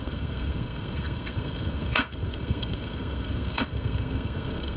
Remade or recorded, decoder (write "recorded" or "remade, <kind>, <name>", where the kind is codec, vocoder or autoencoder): remade, codec, SNAC